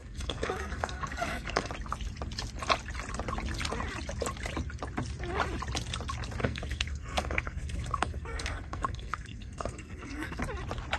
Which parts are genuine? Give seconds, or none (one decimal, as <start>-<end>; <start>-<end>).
1.7-6.4; 10.4-11.0